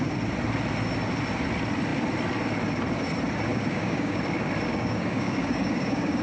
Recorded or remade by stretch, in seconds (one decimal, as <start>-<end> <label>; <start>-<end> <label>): 0.0-3.5 recorded; 3.5-4.2 remade; 4.2-4.7 recorded; 4.7-6.2 remade